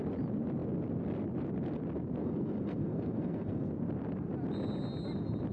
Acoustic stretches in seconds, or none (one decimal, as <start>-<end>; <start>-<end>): 0.0-2.2; 3.7-5.5